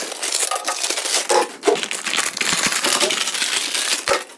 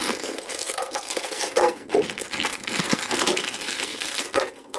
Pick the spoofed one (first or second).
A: second